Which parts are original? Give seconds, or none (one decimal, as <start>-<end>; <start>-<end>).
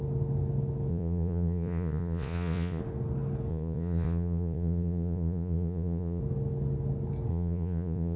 0.0-0.9; 2.8-3.5; 6.2-7.3